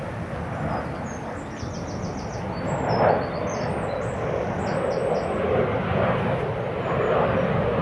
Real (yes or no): yes